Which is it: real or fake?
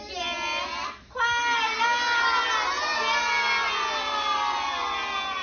real